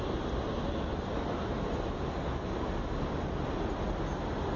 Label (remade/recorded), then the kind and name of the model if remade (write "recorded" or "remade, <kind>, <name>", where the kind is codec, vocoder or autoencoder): recorded